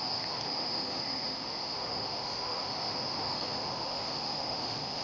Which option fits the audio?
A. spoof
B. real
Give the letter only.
A